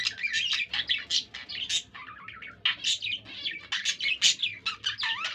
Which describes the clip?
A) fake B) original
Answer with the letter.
B